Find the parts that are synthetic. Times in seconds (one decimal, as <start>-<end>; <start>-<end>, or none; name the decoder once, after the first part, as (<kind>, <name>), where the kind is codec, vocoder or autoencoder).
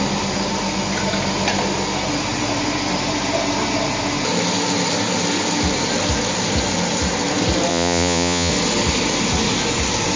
7.7-8.5 (vocoder, Vocos)